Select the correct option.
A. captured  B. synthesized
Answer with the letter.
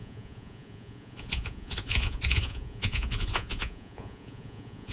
B